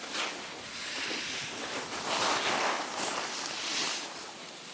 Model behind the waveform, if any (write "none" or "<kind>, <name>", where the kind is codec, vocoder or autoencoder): none